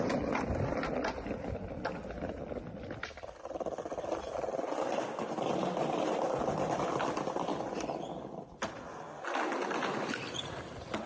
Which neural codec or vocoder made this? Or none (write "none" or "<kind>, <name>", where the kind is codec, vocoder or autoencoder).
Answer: none